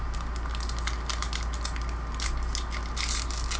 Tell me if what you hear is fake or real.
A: real